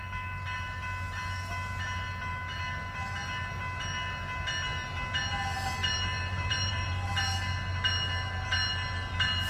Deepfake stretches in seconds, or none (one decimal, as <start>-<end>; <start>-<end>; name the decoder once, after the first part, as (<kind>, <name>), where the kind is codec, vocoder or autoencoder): 5.8-7.1 (vocoder, BigVGAN v2)